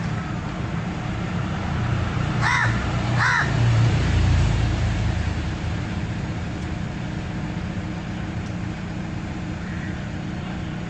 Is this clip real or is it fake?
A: fake